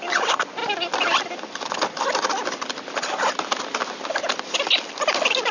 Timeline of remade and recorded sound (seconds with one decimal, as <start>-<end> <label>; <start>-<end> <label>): 0.0-5.5 recorded